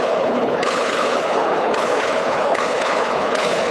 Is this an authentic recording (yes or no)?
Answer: no